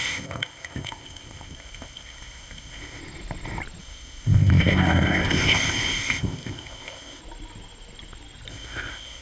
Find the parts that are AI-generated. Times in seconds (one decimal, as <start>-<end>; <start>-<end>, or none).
0.0-3.0; 3.8-7.2; 8.5-9.2